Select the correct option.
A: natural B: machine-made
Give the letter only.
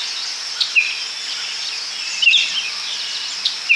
A